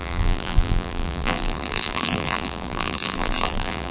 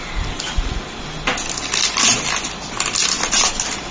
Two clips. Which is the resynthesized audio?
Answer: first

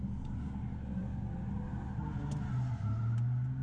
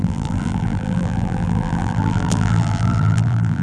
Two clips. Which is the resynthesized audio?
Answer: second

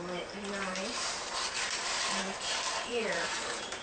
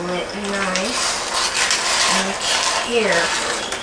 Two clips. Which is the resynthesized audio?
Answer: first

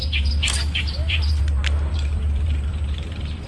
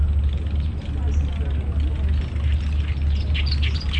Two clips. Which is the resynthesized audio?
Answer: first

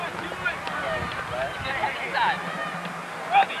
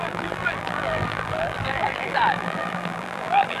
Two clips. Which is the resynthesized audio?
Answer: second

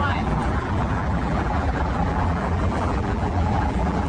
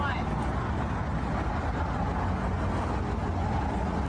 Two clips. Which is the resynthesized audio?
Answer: first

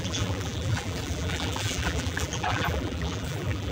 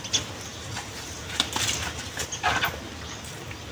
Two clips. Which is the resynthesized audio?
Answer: first